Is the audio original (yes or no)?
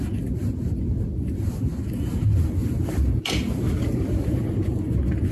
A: yes